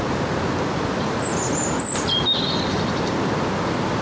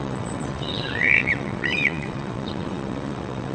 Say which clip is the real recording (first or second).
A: first